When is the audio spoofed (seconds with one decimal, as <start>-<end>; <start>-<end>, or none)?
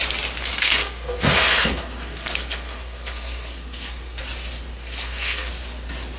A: 0.5-4.2; 4.7-5.5